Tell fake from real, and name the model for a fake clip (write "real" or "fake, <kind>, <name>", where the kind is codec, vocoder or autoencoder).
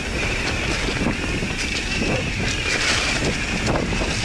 real